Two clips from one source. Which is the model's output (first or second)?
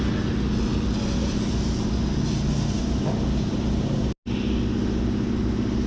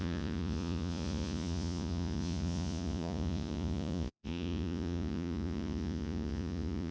second